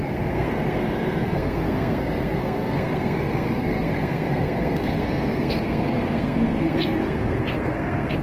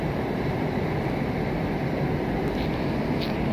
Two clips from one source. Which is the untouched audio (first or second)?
second